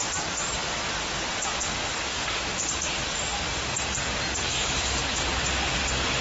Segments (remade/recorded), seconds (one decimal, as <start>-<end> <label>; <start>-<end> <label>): 0.0-4.5 recorded; 4.5-5.0 remade; 5.0-6.2 recorded